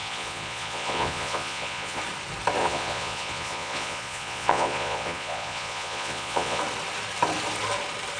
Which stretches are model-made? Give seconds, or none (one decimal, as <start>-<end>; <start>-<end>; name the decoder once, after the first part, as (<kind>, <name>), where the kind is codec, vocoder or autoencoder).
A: 0.0-2.0 (vocoder, Vocos); 2.6-6.6